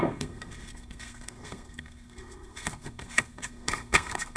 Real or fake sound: fake